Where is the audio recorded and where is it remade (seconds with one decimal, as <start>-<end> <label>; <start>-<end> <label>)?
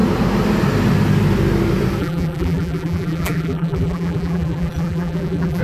0.0-2.0 recorded; 2.0-5.6 remade